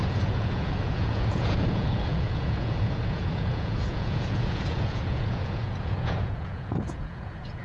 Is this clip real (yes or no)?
no